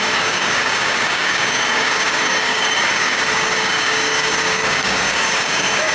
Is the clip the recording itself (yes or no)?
no